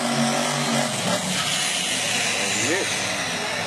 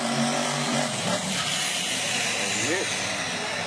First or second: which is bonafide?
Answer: first